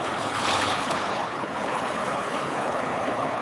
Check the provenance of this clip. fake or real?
fake